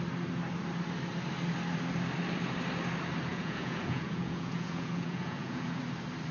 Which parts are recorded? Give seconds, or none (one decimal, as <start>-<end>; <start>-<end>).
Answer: 0.0-3.3; 5.8-6.3